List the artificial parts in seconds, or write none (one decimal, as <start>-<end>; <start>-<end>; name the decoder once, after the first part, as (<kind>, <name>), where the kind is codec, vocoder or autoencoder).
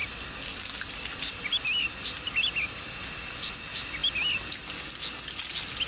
none